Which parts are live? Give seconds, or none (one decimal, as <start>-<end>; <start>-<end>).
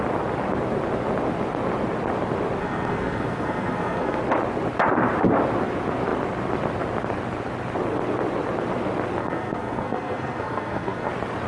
0.0-2.6; 4.2-9.2; 11.1-11.5